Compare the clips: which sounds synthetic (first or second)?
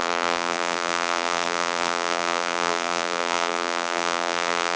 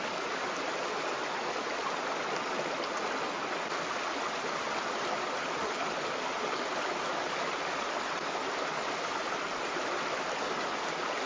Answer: first